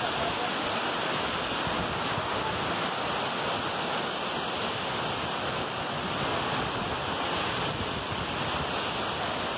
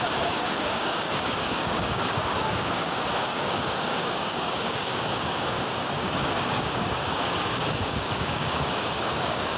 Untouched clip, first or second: first